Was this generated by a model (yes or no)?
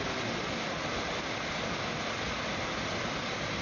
no